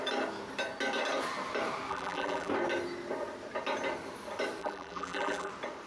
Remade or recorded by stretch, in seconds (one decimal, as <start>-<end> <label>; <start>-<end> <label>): 0.0-1.9 recorded; 1.9-2.5 remade; 2.5-4.6 recorded; 4.6-5.5 remade; 5.5-5.9 recorded